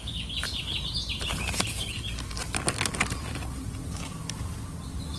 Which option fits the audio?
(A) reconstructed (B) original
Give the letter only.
B